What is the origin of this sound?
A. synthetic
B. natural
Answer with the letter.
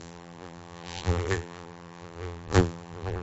A